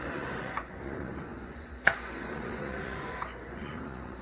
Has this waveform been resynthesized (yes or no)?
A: yes